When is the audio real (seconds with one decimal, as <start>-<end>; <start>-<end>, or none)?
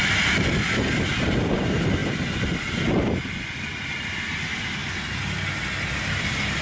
0.0-6.6